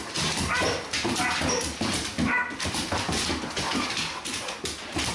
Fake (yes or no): no